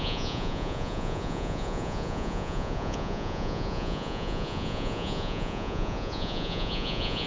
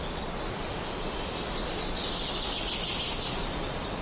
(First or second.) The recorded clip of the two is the second